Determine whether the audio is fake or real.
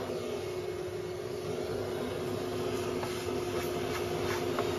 real